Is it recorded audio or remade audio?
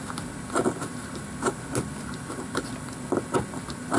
recorded